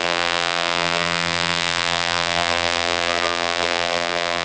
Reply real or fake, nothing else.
fake